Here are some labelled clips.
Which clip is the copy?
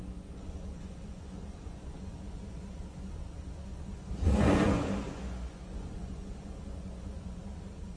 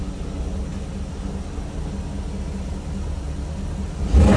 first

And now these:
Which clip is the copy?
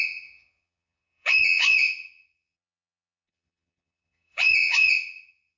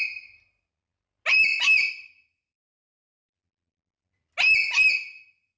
first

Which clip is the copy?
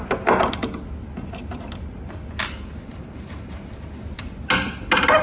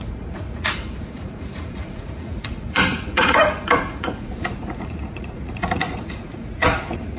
second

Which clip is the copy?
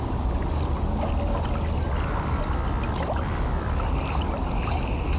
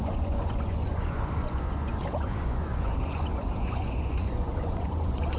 second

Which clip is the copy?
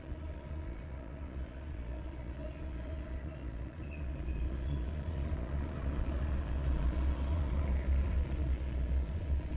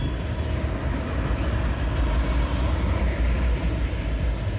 first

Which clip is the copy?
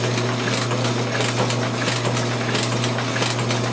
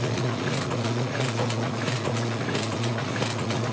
second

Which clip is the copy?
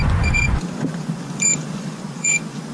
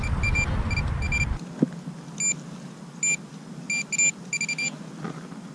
first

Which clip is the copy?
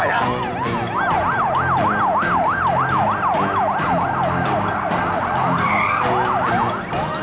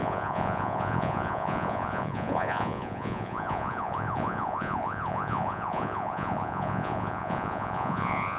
second